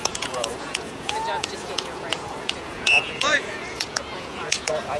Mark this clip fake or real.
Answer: fake